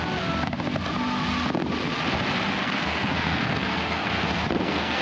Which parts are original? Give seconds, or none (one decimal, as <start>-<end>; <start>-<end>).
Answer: 0.0-2.6